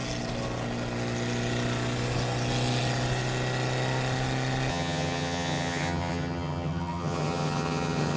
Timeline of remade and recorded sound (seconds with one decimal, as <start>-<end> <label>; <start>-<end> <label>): 0.0-4.7 recorded; 4.7-8.2 remade